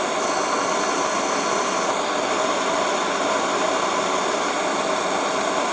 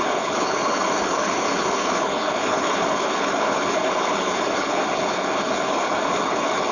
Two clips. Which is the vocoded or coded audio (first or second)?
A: second